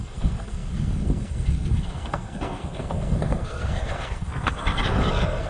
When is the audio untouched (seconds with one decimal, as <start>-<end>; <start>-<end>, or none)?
none